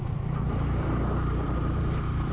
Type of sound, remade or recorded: remade